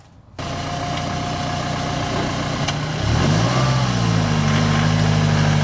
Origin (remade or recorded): recorded